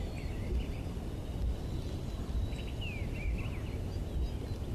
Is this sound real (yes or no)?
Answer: yes